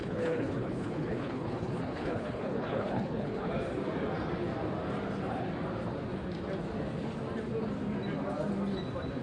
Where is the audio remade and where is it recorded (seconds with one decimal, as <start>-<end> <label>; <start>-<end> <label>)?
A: 0.0-3.5 remade; 3.5-9.2 recorded